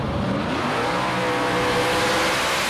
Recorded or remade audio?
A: recorded